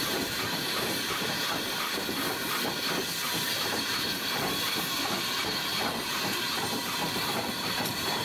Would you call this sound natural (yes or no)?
no